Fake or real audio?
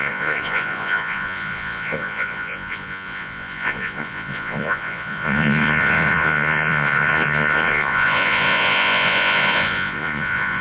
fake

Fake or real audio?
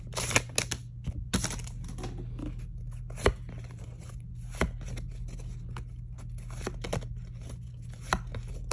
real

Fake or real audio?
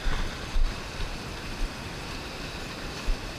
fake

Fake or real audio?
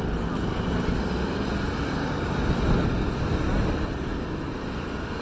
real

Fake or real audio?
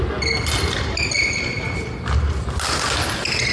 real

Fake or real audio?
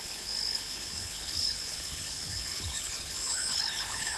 fake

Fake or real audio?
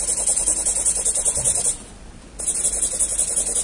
real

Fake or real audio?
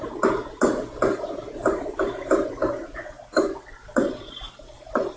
real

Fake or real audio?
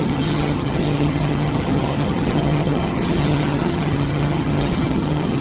fake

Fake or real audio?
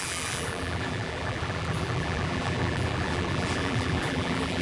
fake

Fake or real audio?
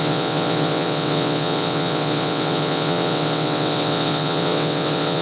fake